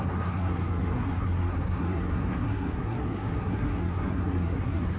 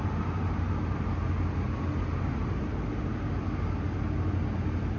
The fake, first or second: first